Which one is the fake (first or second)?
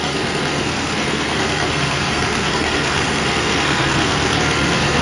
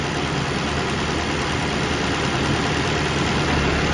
first